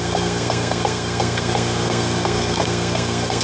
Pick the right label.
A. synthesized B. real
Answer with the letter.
A